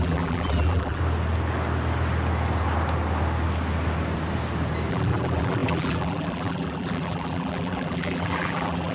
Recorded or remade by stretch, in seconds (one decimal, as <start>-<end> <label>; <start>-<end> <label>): 0.0-1.0 remade; 1.0-4.9 recorded; 4.9-8.9 remade